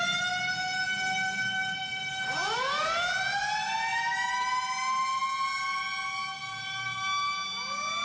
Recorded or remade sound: recorded